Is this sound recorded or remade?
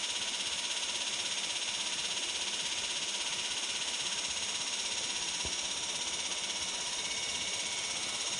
recorded